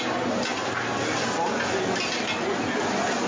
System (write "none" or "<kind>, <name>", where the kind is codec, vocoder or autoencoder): none